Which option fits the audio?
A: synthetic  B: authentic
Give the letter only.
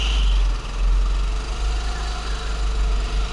B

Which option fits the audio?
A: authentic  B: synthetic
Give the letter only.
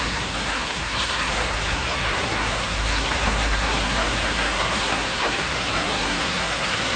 B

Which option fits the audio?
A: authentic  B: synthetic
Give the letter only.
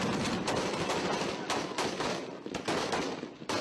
A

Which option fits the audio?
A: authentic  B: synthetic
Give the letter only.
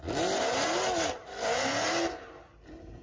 A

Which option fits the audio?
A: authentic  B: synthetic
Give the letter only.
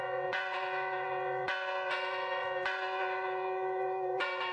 B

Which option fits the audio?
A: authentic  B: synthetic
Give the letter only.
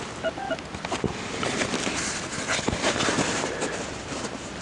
A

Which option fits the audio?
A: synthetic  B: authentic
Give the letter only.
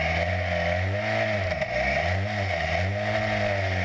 B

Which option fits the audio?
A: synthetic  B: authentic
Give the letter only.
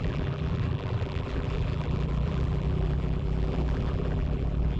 A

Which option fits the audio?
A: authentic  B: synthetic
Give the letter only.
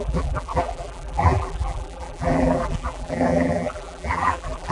B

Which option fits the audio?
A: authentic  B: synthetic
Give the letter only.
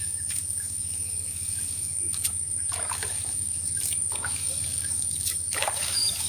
B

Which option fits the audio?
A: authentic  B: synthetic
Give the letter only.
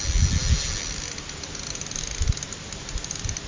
A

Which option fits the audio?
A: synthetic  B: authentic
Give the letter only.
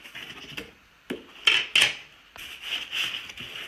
B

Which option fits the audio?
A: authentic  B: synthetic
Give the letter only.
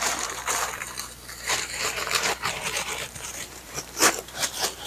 B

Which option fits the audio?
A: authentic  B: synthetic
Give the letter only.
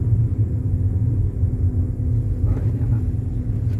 A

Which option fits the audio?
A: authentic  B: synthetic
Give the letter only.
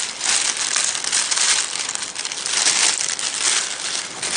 A